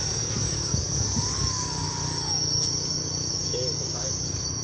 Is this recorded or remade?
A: remade